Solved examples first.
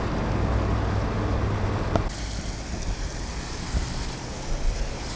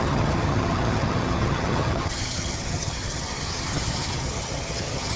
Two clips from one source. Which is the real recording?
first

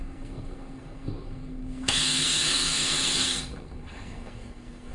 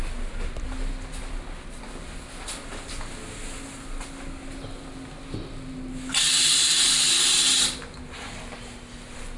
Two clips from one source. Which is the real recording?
second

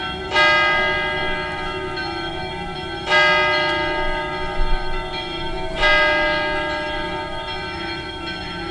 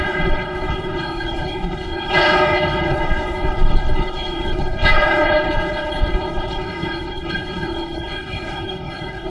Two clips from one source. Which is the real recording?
first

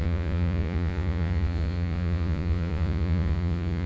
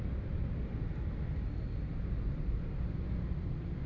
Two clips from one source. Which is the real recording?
second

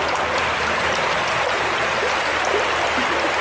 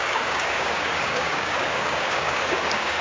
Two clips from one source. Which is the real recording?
first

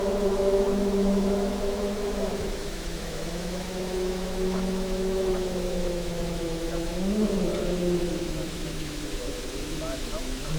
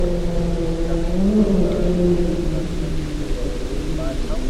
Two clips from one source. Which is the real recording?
second